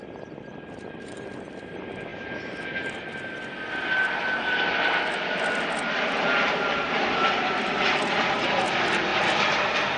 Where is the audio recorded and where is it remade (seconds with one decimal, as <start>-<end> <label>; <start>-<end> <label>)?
0.0-2.1 remade; 2.1-4.4 recorded; 4.4-10.0 remade